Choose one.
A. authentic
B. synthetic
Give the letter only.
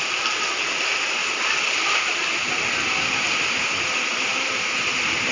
A